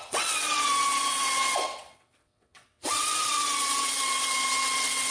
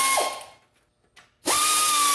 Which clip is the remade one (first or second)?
first